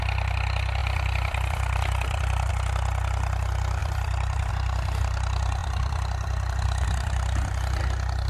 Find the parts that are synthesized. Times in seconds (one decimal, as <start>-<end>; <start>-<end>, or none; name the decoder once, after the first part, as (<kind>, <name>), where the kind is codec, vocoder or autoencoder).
0.8-2.5 (vocoder, BigVGAN v2); 3.8-4.5; 5.6-7.8